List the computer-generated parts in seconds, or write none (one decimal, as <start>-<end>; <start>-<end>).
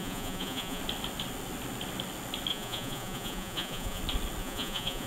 0.0-0.8; 2.5-4.0; 4.4-5.1